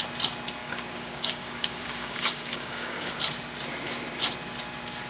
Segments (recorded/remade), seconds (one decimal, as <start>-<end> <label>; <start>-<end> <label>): 0.0-0.6 recorded; 0.6-3.2 remade; 3.2-5.1 recorded